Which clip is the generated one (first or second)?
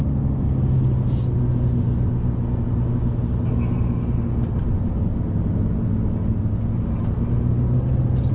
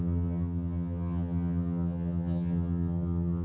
second